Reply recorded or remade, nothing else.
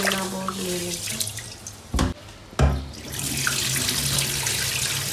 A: recorded